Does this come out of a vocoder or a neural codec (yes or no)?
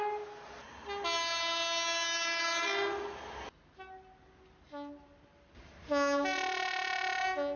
no